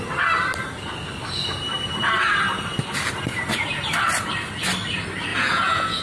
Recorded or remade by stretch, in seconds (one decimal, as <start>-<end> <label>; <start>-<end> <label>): 0.0-5.3 recorded; 5.3-6.0 remade